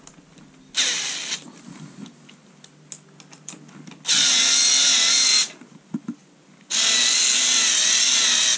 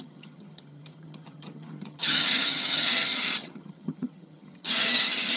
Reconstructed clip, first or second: second